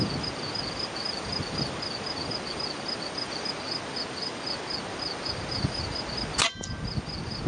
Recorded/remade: recorded